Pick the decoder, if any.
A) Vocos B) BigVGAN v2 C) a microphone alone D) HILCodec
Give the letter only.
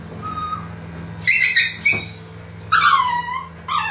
C